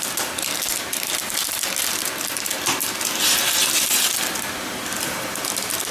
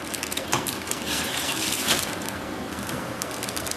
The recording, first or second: first